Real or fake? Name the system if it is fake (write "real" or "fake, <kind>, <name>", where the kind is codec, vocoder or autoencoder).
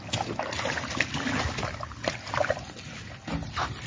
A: real